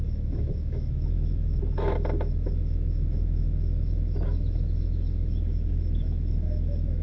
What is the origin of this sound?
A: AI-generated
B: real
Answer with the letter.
A